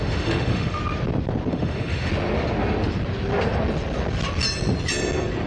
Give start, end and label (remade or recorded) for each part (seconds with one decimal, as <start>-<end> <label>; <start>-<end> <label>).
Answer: 0.0-0.8 remade; 0.8-1.5 recorded; 1.5-2.1 remade; 2.1-5.5 recorded

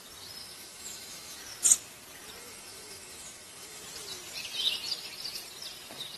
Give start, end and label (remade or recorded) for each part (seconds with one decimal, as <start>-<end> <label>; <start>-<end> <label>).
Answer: 0.0-0.4 recorded; 0.4-1.4 remade; 1.4-2.4 recorded; 2.4-3.8 remade; 3.8-6.2 recorded

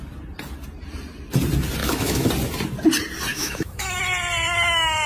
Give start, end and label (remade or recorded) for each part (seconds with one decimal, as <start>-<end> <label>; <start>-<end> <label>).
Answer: 0.0-1.8 recorded; 1.8-2.3 remade; 2.3-3.3 recorded; 3.3-4.0 remade; 4.0-5.1 recorded

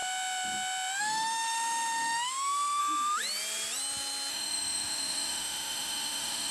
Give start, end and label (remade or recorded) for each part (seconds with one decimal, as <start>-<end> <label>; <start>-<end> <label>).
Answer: 0.0-1.0 recorded; 1.0-2.8 remade; 2.8-4.3 recorded; 4.3-6.5 remade

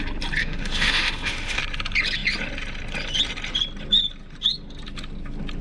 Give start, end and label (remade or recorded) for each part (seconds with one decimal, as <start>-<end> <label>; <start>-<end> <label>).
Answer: 0.0-0.4 recorded; 0.4-1.6 remade; 1.6-5.6 recorded

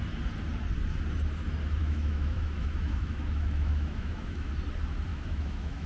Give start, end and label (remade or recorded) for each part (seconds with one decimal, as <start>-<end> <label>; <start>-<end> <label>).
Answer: 0.0-1.8 recorded; 1.8-4.5 remade; 4.5-5.1 recorded; 5.1-5.9 remade

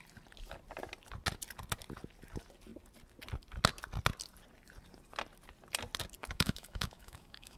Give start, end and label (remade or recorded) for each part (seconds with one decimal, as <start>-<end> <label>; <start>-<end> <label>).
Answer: 0.0-6.2 recorded; 6.2-7.6 remade